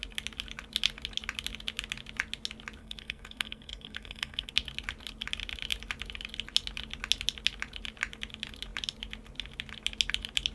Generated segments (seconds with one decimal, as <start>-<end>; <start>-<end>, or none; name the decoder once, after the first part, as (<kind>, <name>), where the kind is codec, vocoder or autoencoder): 2.8-4.5 (codec, SNAC)